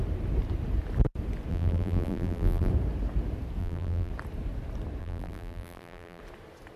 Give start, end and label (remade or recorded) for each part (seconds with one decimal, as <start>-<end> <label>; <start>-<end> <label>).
0.0-1.5 recorded; 1.5-2.7 remade; 2.7-3.6 recorded; 3.6-4.1 remade; 4.1-5.0 recorded; 5.0-6.2 remade; 6.2-6.8 recorded